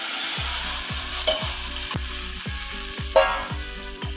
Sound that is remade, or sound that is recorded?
remade